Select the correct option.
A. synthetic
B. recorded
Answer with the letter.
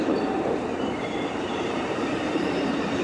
A